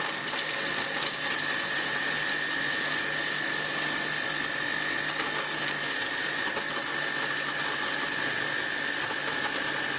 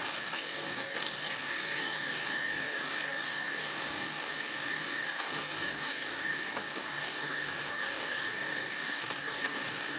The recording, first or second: first